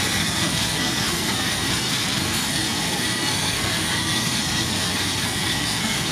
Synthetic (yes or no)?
yes